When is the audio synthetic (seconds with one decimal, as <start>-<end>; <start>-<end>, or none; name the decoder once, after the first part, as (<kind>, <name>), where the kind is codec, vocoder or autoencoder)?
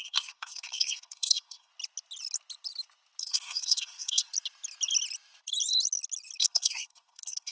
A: 0.0-1.7 (codec, SNAC); 3.2-4.3; 6.4-7.5